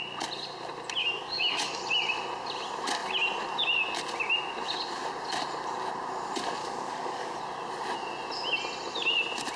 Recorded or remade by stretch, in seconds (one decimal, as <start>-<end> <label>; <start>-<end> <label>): 0.0-1.0 recorded; 1.0-1.8 remade; 1.8-6.6 recorded; 6.6-7.4 remade; 7.4-9.6 recorded